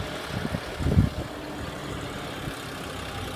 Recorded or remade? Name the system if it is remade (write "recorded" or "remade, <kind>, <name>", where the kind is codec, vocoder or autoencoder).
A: recorded